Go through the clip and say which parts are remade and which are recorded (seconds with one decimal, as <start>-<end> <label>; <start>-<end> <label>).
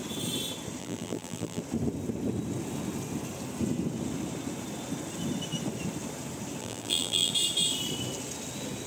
0.0-0.8 recorded; 0.8-1.6 remade; 1.6-6.6 recorded; 6.6-7.3 remade; 7.3-8.9 recorded